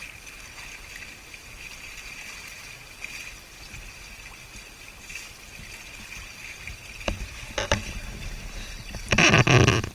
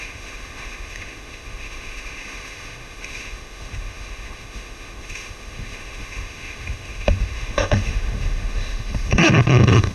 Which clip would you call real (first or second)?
first